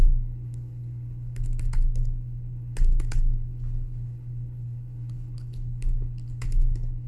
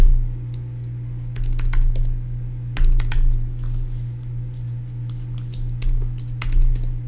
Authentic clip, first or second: second